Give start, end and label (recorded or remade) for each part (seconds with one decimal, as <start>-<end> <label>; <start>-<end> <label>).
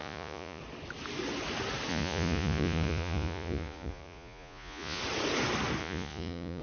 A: 0.0-0.6 remade; 0.6-1.9 recorded; 1.9-5.0 remade; 5.0-5.8 recorded; 5.8-6.6 remade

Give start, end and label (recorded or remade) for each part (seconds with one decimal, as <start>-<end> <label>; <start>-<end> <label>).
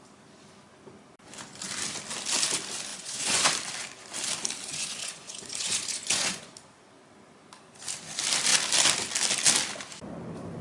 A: 0.0-2.9 recorded; 2.9-3.5 remade; 3.5-4.7 recorded; 4.7-6.5 remade; 6.5-10.6 recorded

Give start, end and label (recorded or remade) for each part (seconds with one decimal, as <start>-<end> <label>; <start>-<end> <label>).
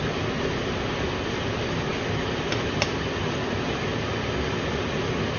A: 0.0-5.4 recorded